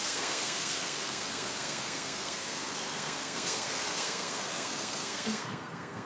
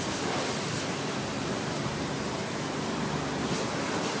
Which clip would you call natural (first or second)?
second